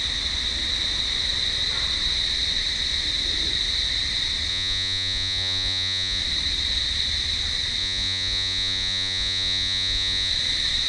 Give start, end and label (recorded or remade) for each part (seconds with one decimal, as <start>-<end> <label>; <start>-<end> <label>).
0.0-4.5 recorded; 4.5-6.2 remade; 6.2-7.8 recorded; 7.8-10.3 remade; 10.3-10.9 recorded